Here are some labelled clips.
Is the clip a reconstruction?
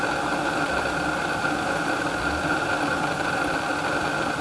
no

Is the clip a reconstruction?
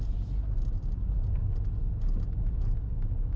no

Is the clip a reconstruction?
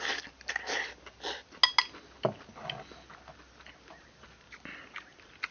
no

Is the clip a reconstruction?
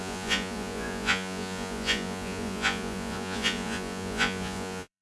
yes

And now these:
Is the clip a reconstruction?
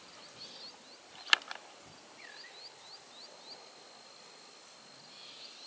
no